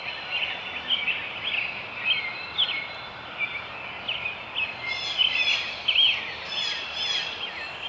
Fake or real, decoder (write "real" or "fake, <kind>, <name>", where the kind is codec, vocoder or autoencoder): real